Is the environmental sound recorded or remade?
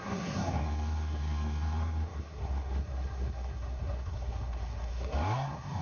remade